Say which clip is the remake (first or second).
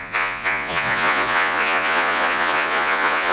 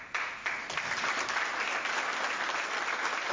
first